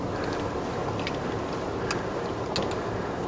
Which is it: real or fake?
real